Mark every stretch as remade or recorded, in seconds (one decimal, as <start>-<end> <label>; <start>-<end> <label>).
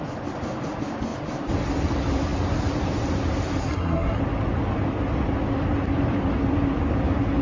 0.0-3.6 recorded; 3.6-4.2 remade; 4.2-7.4 recorded